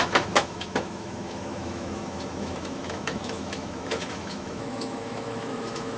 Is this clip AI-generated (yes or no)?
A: yes